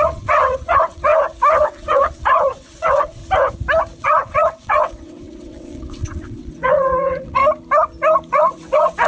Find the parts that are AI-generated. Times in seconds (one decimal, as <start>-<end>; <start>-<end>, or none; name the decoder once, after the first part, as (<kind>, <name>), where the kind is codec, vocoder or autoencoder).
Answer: 0.0-1.1 (vocoder, WaveNeXt); 1.6-3.2; 4.0-7.4; 8.3-9.1